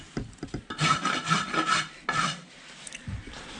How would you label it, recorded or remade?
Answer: recorded